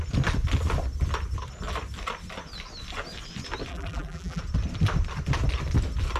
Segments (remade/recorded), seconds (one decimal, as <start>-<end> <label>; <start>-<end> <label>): 0.0-3.7 recorded; 3.7-4.4 remade; 4.4-6.2 recorded